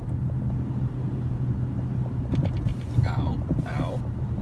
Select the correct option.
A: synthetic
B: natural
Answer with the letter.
B